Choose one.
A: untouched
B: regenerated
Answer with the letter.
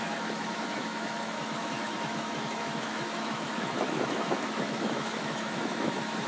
B